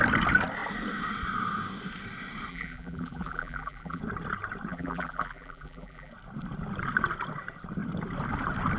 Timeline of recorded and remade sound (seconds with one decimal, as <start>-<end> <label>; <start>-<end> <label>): 0.0-2.5 recorded; 2.5-4.0 remade; 4.0-4.7 recorded; 4.7-6.1 remade; 6.1-8.8 recorded